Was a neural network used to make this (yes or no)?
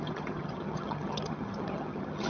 yes